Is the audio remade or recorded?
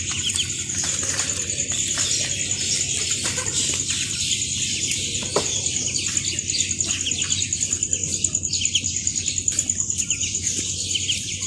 recorded